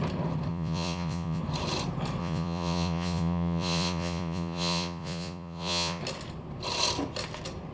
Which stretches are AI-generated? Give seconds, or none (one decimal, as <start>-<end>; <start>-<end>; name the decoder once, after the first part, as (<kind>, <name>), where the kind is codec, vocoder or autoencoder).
0.5-1.4 (vocoder, Vocos); 2.2-6.0